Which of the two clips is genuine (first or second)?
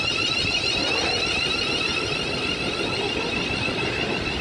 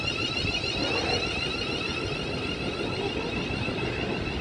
second